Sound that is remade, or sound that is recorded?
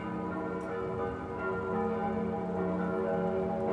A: recorded